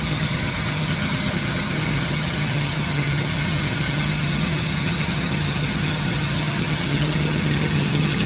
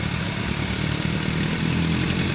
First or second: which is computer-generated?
first